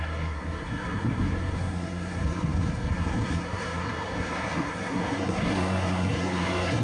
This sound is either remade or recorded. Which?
remade